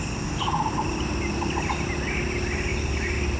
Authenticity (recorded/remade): recorded